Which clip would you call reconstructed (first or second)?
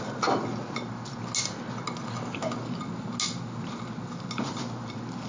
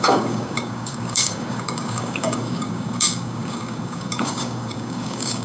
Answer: second